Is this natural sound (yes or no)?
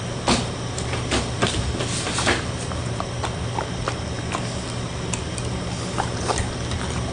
yes